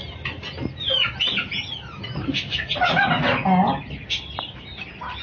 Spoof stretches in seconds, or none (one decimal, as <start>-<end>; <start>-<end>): none